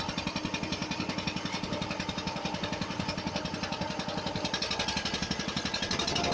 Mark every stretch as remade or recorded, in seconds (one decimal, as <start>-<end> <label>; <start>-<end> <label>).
0.0-6.3 recorded